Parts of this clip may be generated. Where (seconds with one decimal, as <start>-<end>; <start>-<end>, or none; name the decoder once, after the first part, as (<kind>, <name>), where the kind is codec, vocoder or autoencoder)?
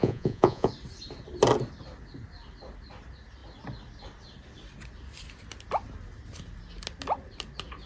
0.0-0.7 (vocoder, Vocos)